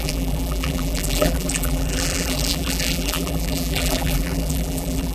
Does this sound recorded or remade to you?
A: remade